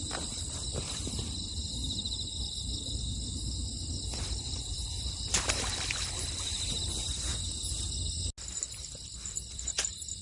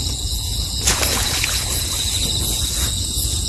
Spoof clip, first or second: second